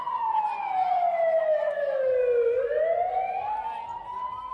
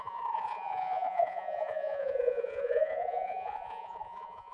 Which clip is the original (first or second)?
first